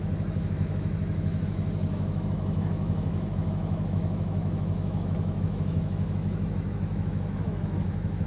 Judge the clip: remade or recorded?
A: remade